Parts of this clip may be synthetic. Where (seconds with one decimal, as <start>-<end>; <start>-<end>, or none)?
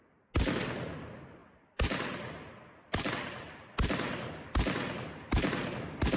none